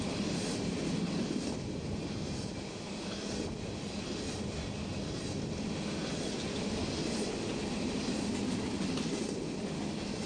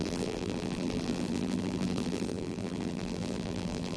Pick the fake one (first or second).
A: second